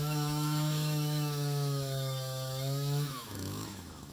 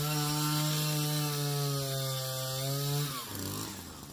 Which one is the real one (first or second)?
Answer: second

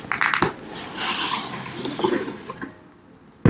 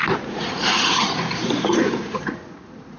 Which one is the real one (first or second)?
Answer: first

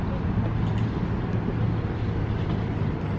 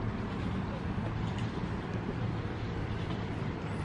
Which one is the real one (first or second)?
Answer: first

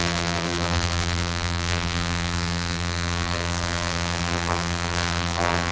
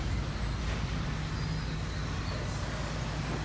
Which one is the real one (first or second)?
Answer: second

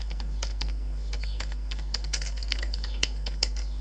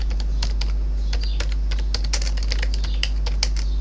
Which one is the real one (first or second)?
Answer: second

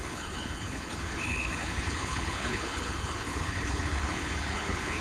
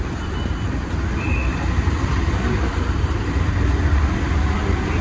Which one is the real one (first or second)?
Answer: second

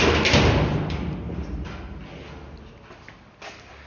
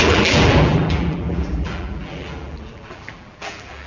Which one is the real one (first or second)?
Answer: first